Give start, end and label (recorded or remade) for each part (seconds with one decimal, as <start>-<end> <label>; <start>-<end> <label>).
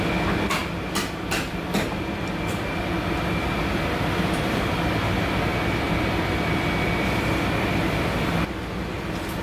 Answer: 0.0-9.4 recorded